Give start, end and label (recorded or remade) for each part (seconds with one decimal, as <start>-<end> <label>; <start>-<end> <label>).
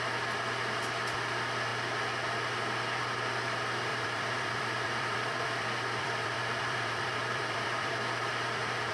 0.0-3.9 recorded; 3.9-8.9 remade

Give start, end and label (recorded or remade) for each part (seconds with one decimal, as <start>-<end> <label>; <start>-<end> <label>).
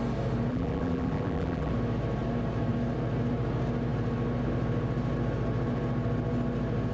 0.0-0.5 recorded; 0.5-1.7 remade; 1.7-6.9 recorded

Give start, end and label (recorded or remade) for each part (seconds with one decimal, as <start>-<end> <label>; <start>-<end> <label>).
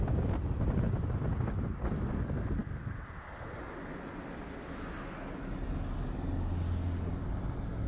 0.0-7.9 recorded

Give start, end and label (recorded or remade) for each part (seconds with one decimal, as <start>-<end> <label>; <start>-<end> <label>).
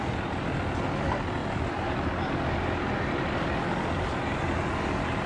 0.0-5.3 recorded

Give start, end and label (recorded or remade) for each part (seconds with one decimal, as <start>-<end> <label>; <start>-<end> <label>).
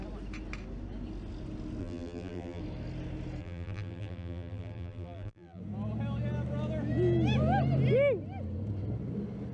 0.0-1.8 recorded; 1.8-2.6 remade; 2.6-3.4 recorded; 3.4-5.6 remade; 5.6-9.5 recorded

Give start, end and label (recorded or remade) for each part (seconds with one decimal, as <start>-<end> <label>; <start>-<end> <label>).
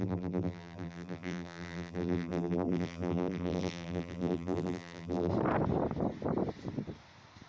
0.0-5.3 remade; 5.3-7.5 recorded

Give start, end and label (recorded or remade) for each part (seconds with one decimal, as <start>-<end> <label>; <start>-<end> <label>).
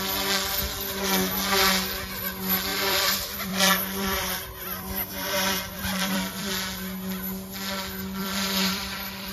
0.0-2.7 recorded; 2.7-6.5 remade; 6.5-8.2 recorded; 8.2-9.3 remade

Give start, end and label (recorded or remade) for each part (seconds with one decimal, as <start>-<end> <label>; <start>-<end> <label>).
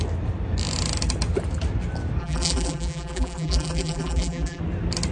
0.0-2.2 recorded; 2.2-4.6 remade; 4.6-5.1 recorded